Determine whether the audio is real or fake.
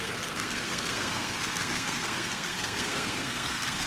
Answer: fake